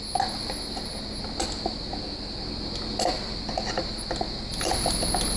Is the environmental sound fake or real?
real